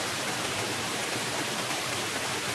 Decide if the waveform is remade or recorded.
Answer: remade